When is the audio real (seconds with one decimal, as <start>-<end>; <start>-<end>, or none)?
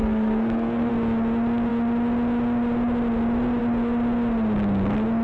0.9-5.2